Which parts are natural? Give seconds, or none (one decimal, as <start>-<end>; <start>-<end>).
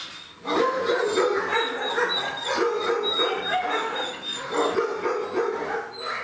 0.0-6.2